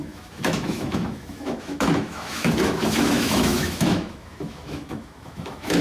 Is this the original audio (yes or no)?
no